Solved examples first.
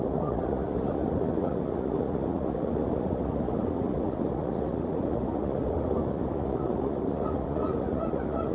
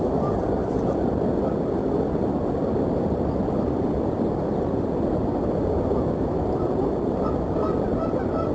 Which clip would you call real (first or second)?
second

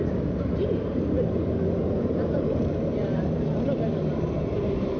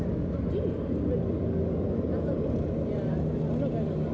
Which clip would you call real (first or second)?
second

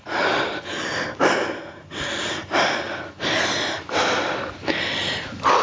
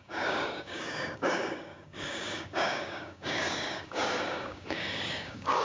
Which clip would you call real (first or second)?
first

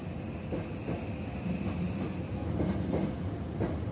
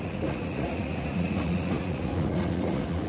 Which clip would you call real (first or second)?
first